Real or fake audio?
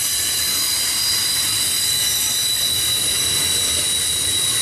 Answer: real